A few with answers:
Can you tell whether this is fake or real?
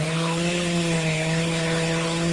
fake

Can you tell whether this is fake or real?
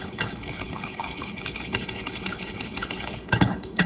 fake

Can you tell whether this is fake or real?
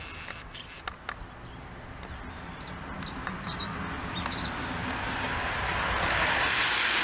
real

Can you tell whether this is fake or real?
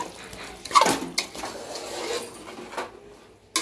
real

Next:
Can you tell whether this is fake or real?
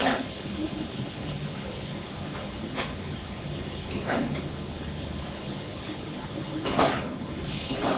fake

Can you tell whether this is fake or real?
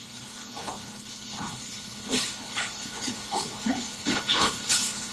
fake